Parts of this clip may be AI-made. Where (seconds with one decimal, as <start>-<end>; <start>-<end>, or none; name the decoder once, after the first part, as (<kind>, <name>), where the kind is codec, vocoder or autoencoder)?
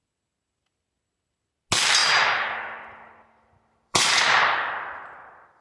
2.0-5.6 (vocoder, BigVGAN v2)